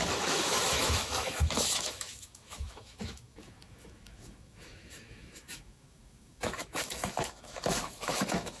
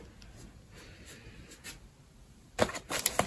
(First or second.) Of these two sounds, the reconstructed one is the first